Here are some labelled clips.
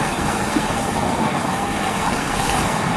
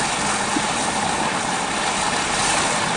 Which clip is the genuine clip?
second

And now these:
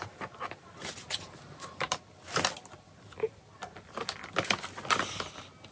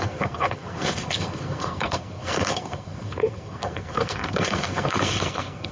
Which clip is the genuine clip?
first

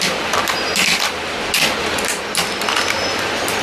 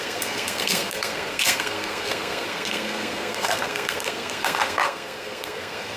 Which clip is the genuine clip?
first